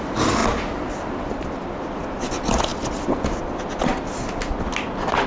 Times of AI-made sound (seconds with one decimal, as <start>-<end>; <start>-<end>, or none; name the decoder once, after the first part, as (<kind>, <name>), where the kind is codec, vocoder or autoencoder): none